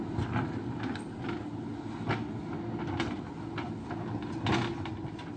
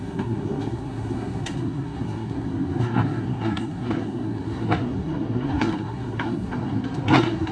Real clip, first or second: first